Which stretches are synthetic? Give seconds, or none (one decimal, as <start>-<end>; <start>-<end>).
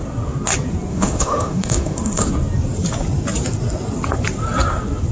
0.9-2.3